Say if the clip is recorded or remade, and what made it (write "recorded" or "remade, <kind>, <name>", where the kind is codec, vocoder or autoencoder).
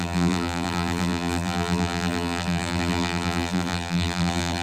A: remade, vocoder, BigVGAN v2